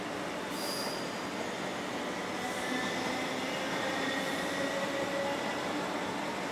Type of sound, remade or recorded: recorded